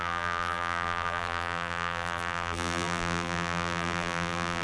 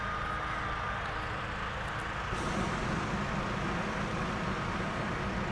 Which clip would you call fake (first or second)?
first